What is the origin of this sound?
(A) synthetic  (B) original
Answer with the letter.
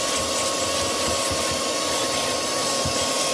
B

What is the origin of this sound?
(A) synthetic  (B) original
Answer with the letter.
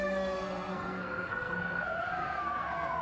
A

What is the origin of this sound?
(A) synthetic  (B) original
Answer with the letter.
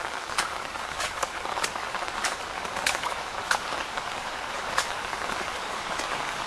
A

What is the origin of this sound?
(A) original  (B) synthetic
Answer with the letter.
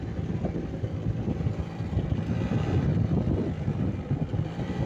A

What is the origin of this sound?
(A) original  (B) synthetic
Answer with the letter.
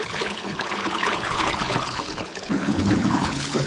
B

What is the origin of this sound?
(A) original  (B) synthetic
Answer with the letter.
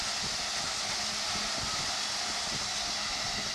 A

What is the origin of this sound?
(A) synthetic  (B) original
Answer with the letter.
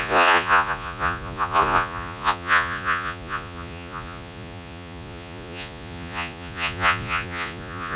A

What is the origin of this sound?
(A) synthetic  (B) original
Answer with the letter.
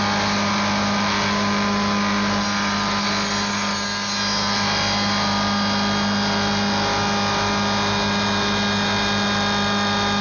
B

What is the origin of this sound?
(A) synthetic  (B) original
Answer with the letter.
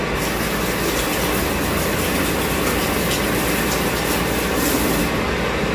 B